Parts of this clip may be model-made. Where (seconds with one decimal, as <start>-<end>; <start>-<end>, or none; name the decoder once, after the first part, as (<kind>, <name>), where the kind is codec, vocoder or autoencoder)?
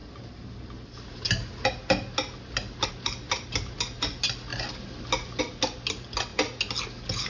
none